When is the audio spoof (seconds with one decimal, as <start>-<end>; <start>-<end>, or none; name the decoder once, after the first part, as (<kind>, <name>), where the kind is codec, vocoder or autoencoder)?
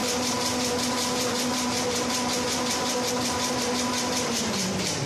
none